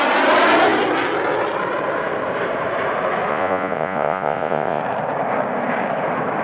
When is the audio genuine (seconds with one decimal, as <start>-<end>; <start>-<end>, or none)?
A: 0.0-3.3; 4.8-6.4